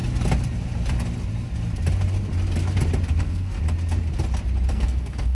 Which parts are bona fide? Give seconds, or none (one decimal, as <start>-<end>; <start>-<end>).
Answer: 0.0-3.2; 3.6-4.7